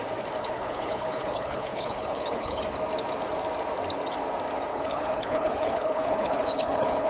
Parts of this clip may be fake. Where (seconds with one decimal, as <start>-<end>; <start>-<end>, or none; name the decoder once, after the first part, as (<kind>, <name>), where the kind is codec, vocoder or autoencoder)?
0.4-2.6 (codec, HILCodec); 4.7-7.1